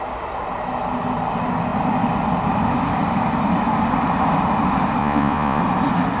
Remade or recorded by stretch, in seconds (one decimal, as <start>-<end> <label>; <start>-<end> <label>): 0.0-5.0 recorded; 5.0-5.6 remade; 5.6-6.2 recorded